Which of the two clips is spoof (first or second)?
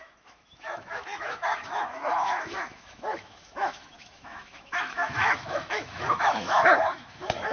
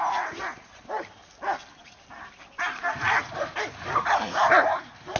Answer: first